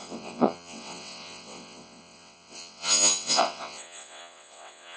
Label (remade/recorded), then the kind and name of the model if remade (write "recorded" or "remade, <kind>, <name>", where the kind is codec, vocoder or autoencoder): remade, vocoder, WaveNeXt